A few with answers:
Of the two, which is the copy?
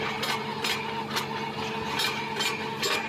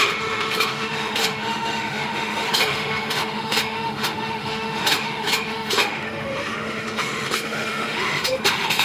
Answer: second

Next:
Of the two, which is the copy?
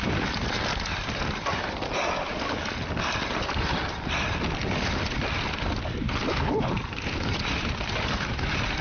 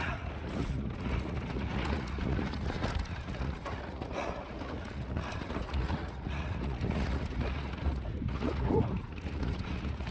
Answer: second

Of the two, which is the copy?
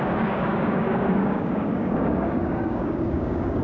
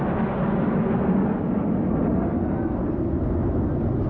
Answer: first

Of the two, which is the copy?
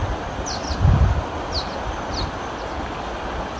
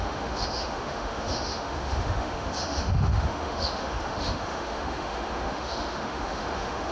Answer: second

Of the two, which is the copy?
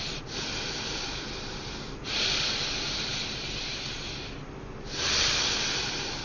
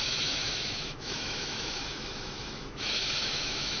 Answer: second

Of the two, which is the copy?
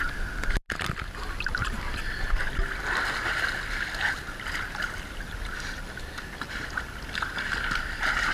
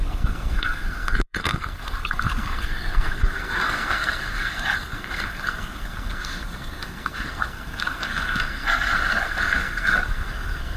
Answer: second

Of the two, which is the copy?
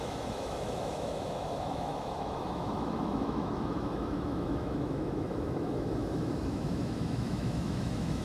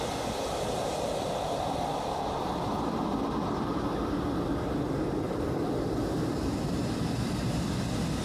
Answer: first